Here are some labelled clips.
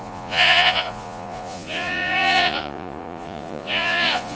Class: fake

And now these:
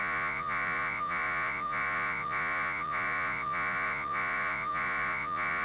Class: fake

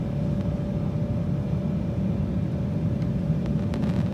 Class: real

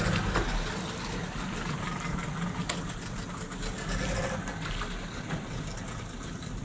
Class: real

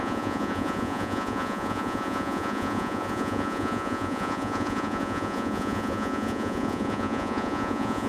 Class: fake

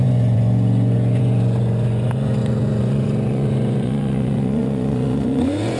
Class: fake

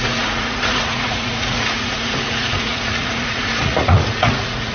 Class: fake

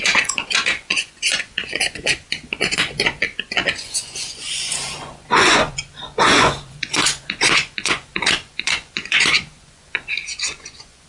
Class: fake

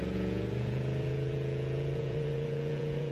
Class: fake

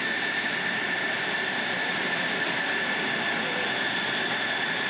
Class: real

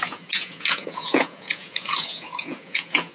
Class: fake